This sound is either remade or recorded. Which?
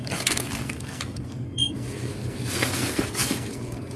remade